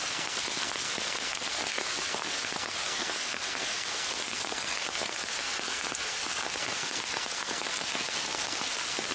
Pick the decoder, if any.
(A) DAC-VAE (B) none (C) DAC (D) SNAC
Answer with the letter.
D